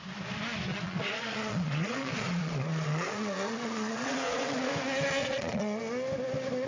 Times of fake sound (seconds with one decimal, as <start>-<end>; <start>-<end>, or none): 0.7-4.7; 5.2-5.8